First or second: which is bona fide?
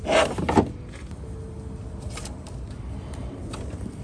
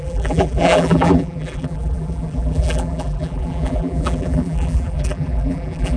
first